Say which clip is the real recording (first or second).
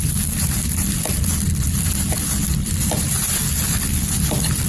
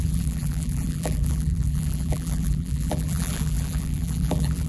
first